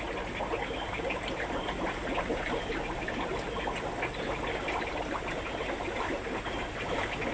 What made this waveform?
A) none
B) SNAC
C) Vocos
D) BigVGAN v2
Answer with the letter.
A